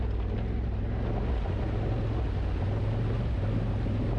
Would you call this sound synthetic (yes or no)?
no